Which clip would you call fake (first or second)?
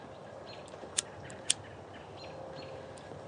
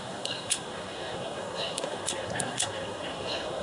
second